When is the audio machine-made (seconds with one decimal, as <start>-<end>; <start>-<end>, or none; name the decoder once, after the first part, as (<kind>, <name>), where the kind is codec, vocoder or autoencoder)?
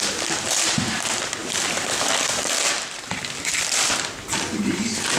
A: none